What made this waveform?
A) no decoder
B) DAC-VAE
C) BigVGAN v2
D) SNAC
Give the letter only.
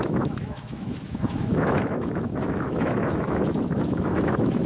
B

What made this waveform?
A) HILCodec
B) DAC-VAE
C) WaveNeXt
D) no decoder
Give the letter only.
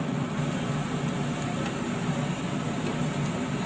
D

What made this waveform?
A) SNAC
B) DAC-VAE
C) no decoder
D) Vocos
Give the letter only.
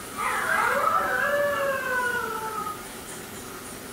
C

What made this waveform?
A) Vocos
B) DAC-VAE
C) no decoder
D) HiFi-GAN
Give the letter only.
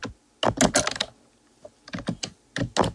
C